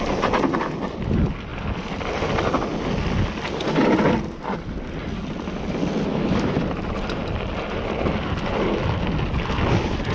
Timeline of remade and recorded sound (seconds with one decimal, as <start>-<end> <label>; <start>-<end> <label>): 0.0-6.1 recorded; 6.1-6.6 remade; 6.6-10.1 recorded